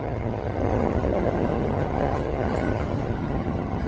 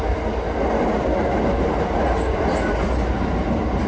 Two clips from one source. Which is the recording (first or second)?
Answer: second